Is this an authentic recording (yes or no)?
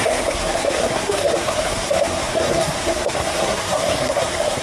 no